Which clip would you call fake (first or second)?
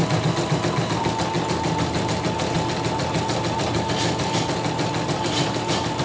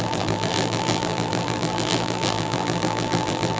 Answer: second